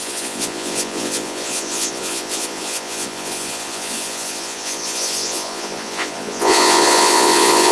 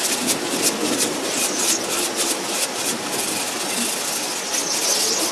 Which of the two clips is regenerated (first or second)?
first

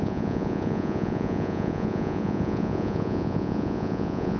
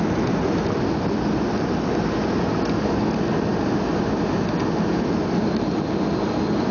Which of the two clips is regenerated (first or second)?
first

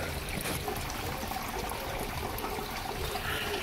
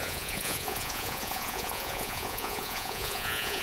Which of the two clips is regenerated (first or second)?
second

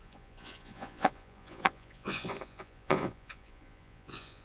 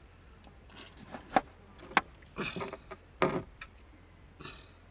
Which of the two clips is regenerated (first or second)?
first